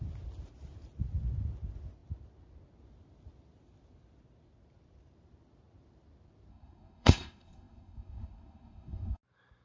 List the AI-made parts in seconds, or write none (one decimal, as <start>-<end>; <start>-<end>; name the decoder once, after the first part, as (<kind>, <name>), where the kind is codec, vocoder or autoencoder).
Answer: 6.5-9.2 (codec, SNAC)